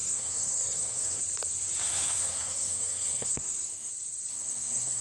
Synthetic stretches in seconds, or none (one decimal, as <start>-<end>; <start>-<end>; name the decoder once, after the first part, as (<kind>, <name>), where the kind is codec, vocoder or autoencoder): 0.0-1.2 (codec, SNAC); 1.8-3.9; 4.3-5.0